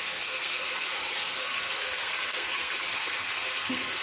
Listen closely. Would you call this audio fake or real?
fake